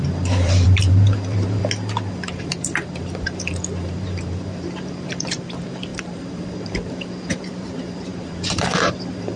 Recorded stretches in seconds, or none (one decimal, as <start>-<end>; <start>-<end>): 1.6-2.1